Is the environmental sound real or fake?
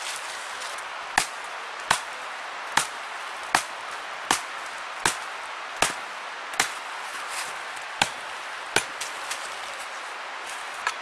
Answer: real